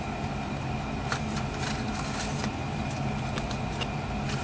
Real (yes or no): yes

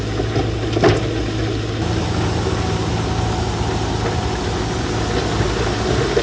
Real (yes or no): yes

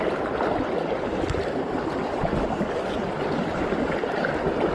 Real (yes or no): yes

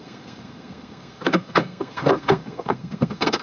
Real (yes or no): no